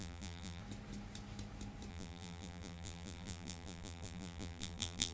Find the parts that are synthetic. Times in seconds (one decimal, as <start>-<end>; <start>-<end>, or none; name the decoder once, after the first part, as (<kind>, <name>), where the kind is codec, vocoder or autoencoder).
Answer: 0.0-0.6 (vocoder, BigVGAN v2); 1.9-5.1

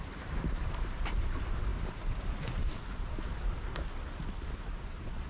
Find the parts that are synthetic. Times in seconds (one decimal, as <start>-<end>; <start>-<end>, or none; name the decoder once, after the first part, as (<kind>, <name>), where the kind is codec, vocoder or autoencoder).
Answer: 0.0-1.7 (vocoder, BigVGAN v2)

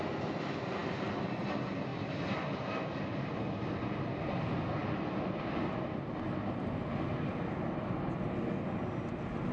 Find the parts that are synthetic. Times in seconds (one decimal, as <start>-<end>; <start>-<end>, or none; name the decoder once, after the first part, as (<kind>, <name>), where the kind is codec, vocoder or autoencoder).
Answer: none